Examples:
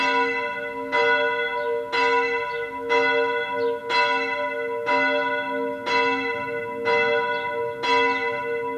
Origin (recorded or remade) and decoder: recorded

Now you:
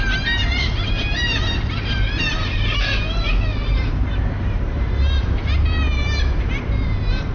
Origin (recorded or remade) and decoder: remade, vocoder, BigVGAN v2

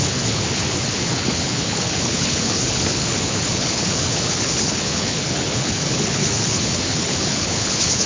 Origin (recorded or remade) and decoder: remade, codec, HILCodec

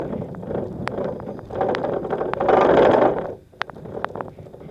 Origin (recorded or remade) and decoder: recorded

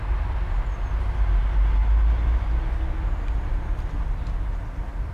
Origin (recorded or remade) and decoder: recorded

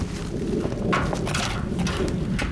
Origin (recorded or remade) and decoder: recorded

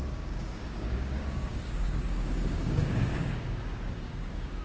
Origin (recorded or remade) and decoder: remade, codec, DAC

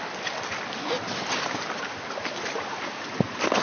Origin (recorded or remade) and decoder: recorded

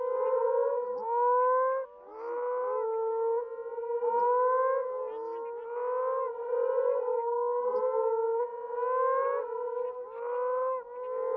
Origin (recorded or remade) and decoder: recorded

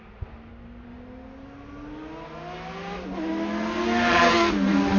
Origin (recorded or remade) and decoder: recorded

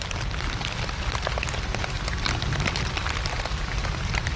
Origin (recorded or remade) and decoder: remade, vocoder, BigVGAN v2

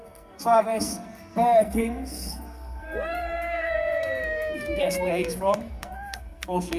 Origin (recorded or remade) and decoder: remade, codec, SNAC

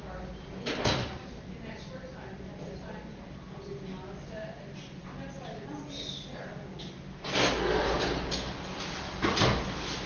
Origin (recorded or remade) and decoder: recorded